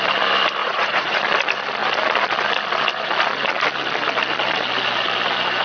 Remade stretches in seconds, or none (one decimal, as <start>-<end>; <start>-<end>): 0.6-1.2